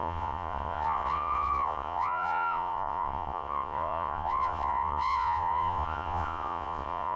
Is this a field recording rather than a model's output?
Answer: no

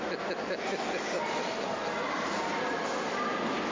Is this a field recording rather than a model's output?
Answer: yes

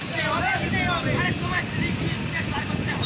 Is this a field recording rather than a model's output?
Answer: yes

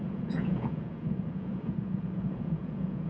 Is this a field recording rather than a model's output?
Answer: no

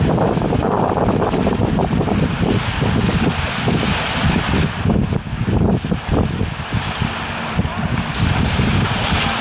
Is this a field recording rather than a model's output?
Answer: yes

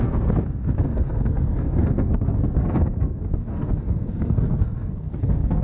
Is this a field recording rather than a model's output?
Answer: no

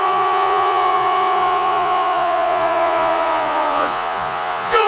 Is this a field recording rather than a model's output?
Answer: no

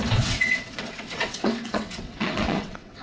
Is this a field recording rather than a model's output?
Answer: no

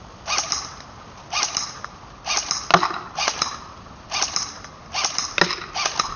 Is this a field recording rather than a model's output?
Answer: yes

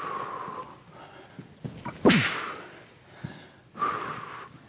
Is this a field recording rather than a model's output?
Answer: yes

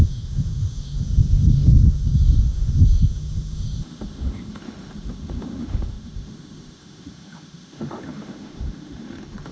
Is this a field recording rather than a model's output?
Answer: no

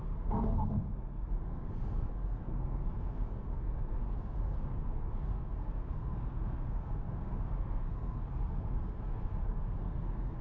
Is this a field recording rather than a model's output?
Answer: no